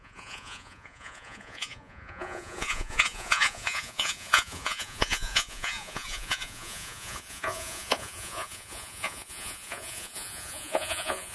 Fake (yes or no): yes